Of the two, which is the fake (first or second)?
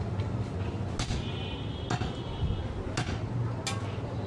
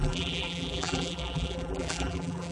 second